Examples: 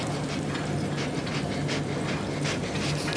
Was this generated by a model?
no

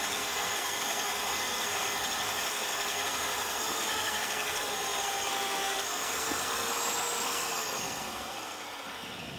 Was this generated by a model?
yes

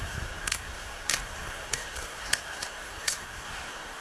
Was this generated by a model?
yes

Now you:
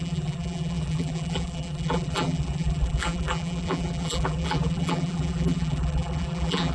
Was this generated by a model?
yes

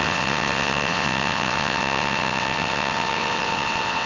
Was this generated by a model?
yes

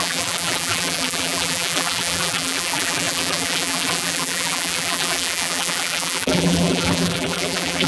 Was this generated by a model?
yes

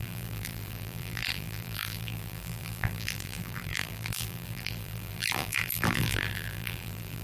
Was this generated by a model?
yes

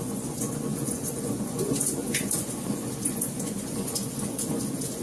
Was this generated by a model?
yes